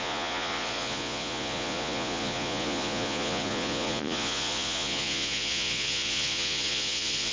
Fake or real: fake